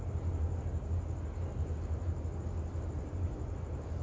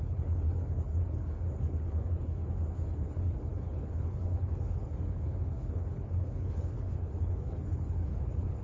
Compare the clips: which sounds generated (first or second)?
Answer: second